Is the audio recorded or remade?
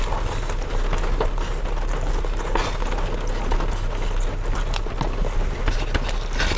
recorded